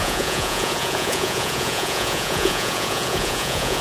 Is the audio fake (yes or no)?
yes